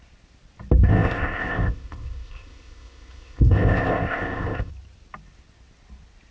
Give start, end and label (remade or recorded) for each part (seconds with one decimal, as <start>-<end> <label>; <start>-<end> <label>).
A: 0.0-0.9 recorded; 0.9-4.7 remade; 4.7-6.3 recorded